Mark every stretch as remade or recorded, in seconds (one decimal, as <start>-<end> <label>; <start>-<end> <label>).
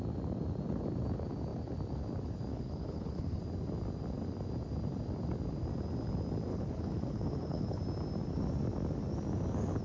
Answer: 0.0-2.5 recorded; 2.5-3.4 remade; 3.4-6.5 recorded; 6.5-7.8 remade; 7.8-9.8 recorded